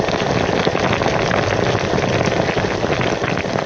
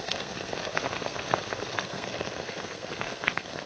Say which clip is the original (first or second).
first